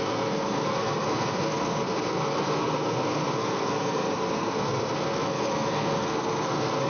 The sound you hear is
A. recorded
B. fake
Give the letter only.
B